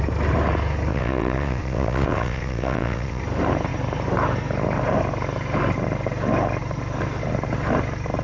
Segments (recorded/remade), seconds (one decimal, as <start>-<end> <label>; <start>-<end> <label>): 0.0-0.9 recorded; 0.9-3.2 remade; 3.2-8.2 recorded